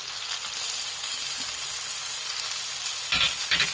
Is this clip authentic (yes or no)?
yes